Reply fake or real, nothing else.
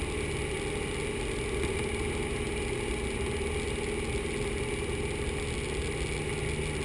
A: real